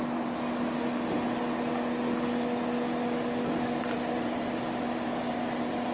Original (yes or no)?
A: yes